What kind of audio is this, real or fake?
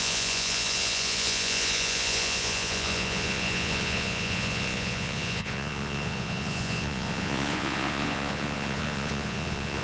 fake